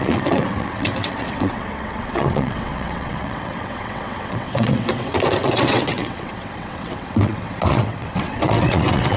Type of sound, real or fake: fake